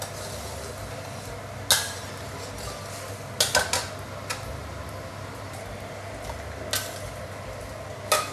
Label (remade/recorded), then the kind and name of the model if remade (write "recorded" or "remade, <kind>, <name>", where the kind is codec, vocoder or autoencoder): recorded